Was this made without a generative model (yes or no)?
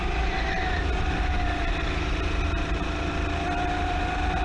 yes